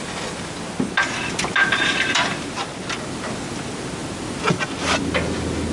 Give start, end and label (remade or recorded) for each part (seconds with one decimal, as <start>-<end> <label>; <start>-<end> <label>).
0.0-1.6 recorded; 1.6-2.8 remade; 2.8-5.7 recorded